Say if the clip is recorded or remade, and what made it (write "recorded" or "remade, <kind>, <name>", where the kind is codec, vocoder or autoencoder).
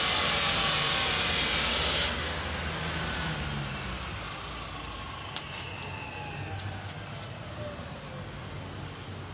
recorded